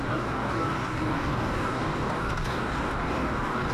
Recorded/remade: remade